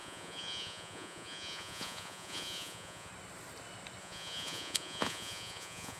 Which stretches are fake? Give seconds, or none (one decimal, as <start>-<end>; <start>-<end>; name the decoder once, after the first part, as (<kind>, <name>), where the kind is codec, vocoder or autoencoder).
0.0-3.1 (vocoder, Vocos); 4.0-6.0